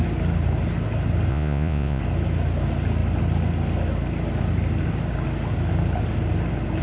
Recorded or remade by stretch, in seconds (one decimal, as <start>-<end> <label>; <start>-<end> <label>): 0.0-1.3 recorded; 1.3-2.0 remade; 2.0-6.8 recorded